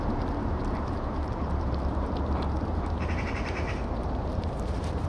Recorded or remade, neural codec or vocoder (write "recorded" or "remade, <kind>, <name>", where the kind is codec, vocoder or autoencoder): remade, vocoder, BigVGAN v2